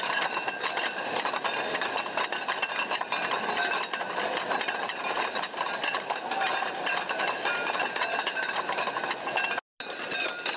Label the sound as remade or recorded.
recorded